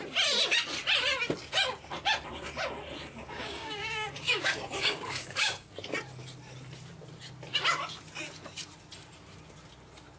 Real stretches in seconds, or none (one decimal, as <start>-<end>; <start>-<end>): 0.0-3.2; 5.7-10.2